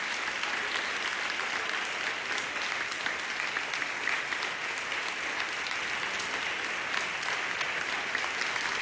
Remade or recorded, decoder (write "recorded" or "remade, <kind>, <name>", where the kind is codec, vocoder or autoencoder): recorded